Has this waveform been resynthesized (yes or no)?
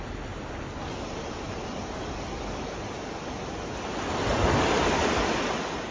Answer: no